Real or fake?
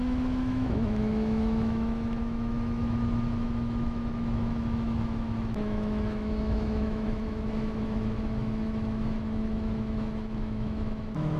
fake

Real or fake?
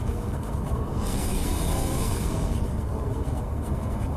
fake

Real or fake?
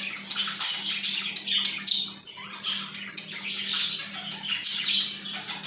real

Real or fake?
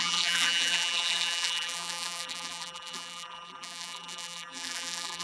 fake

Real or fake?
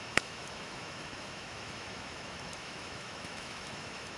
fake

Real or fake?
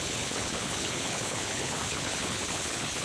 fake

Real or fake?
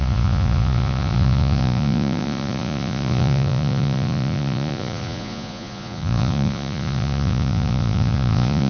fake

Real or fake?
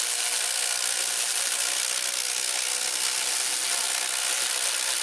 real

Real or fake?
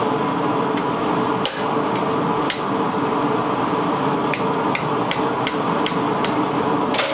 real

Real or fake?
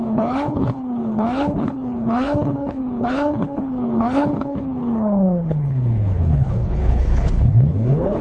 fake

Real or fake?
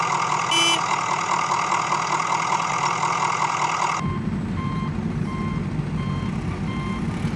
real